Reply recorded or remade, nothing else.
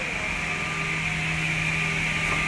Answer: recorded